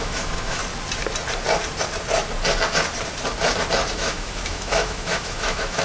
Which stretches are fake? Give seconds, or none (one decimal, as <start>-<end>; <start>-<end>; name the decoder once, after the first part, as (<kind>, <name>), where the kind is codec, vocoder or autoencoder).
0.0-0.6 (autoencoder, DAC-VAE); 3.9-5.8